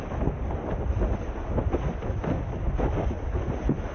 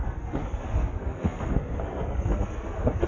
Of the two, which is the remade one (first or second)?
second